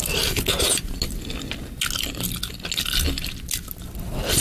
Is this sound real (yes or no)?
yes